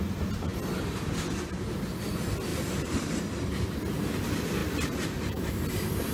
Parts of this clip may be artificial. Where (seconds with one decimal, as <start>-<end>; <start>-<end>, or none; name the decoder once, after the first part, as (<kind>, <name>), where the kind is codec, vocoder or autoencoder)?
2.5-3.2 (vocoder, BigVGAN v2); 4.6-5.5